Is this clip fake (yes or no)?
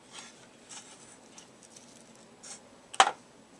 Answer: no